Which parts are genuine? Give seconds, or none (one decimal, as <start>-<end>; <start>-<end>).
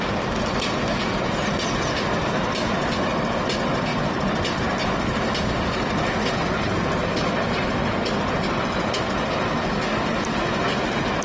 0.0-3.9; 4.6-11.2